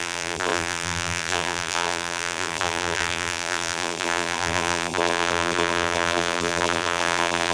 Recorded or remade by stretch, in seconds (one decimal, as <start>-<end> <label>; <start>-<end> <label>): 0.0-7.5 remade